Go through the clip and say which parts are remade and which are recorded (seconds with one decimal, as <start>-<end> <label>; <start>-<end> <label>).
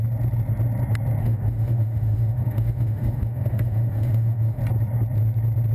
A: 0.0-1.2 recorded; 1.2-4.6 remade; 4.6-5.7 recorded